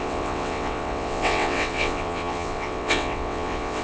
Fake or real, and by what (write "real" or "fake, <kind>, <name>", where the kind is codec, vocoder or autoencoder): fake, vocoder, WaveNeXt